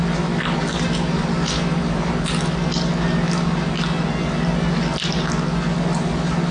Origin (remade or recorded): recorded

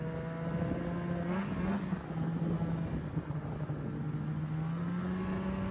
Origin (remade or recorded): recorded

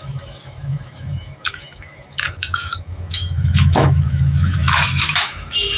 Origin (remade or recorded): remade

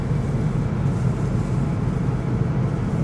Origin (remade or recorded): recorded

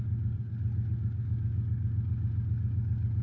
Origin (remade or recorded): recorded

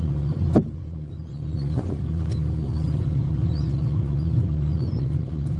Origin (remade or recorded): remade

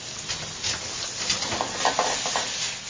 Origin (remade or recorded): recorded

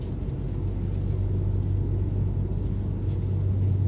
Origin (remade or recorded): recorded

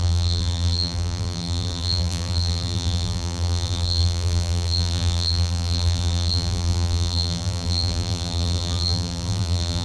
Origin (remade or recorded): remade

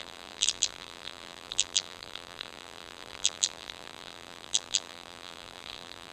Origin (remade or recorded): remade